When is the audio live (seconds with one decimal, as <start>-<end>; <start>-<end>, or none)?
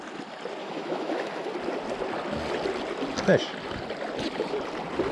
0.0-0.6; 1.5-5.1